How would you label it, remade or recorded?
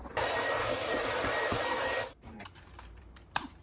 remade